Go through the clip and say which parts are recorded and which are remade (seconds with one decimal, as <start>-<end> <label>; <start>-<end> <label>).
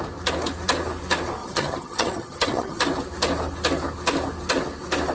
0.0-1.4 recorded; 1.4-2.8 remade; 2.8-5.1 recorded